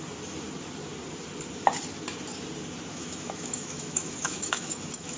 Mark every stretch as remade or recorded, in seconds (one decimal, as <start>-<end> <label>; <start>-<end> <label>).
0.0-2.9 recorded; 2.9-5.2 remade